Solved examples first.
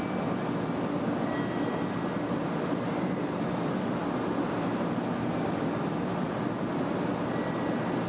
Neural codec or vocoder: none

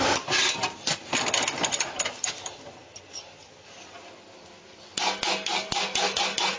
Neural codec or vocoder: none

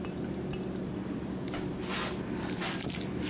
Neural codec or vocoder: none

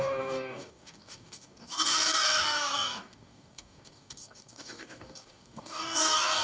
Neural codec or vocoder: codec, DAC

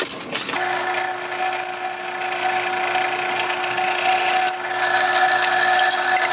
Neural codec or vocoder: none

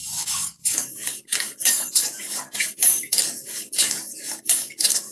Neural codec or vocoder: codec, DAC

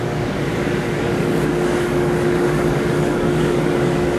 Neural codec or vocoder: codec, DAC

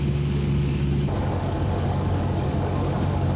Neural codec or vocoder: codec, DAC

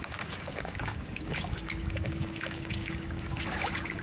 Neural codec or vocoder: codec, DAC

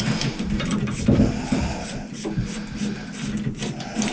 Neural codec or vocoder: none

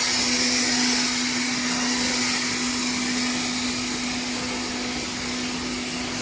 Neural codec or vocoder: none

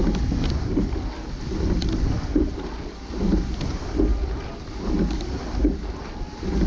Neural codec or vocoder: none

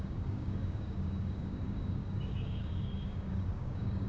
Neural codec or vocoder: codec, DAC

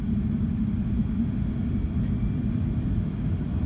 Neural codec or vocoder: none